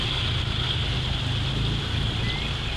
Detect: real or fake real